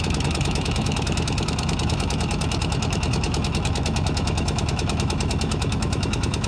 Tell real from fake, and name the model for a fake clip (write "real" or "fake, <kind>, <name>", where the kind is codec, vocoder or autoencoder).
fake, autoencoder, DAC-VAE